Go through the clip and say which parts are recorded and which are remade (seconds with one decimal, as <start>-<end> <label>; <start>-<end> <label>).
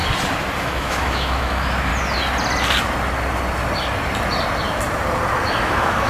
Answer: 0.0-0.6 recorded; 0.6-1.9 remade; 1.9-5.6 recorded; 5.6-6.1 remade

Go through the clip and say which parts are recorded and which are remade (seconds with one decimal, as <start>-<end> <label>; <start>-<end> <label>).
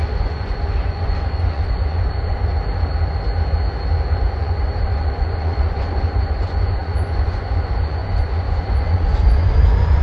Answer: 0.0-2.5 remade; 2.5-4.2 recorded; 4.2-10.0 remade